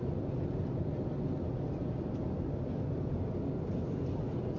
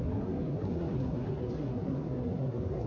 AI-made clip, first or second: second